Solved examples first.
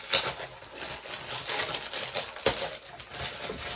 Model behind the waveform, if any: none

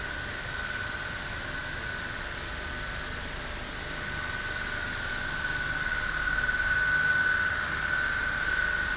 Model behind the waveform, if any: none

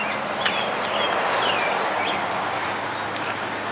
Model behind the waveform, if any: none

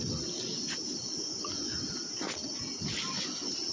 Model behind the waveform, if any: none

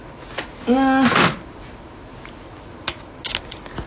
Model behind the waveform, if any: none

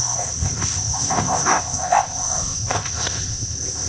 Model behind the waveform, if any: codec, ZipCodec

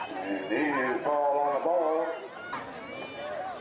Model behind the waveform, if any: none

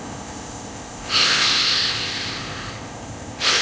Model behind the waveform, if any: codec, ZipCodec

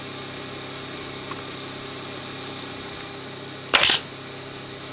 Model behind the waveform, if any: none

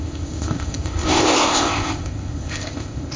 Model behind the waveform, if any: codec, ZipCodec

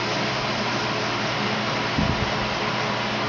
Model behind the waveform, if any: none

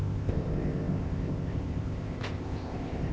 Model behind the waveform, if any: codec, ZipCodec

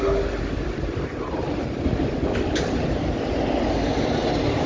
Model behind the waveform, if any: none